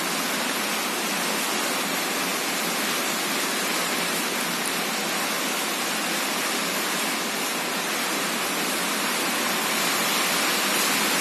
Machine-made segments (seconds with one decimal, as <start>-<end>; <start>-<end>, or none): none

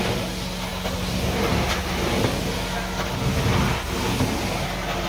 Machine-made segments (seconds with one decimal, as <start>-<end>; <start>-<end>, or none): none

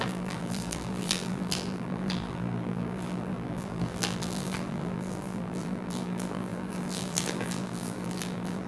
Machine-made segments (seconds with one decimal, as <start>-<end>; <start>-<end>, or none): 0.0-8.7

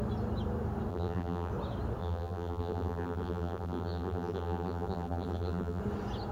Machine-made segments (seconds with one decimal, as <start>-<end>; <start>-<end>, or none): 0.9-1.5; 2.0-5.8

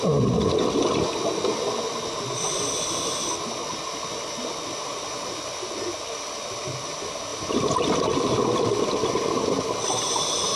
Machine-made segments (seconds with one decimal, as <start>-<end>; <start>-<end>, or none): none

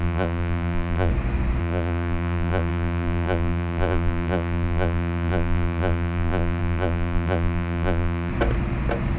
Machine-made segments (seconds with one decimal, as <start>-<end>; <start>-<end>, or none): 0.0-1.1; 1.6-8.3

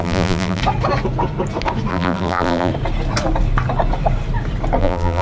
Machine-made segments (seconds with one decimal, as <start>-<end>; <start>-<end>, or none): 0.0-0.6; 1.9-2.7; 4.8-5.2